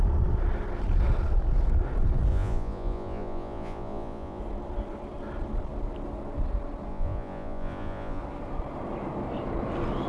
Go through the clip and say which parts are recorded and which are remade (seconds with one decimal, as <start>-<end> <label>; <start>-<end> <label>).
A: 0.0-2.3 recorded; 2.3-4.4 remade; 4.4-6.9 recorded; 6.9-8.2 remade; 8.2-10.1 recorded